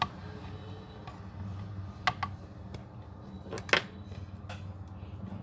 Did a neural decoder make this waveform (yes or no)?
no